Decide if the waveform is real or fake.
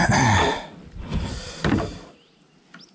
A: real